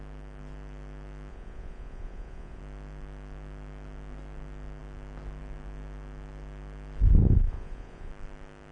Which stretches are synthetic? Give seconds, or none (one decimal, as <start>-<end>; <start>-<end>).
1.3-2.6; 7.2-8.1